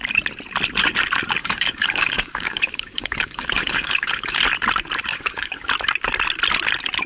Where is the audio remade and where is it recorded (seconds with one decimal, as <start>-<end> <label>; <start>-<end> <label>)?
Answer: 0.0-1.4 recorded; 1.4-4.4 remade; 4.4-5.1 recorded; 5.1-5.7 remade; 5.7-7.1 recorded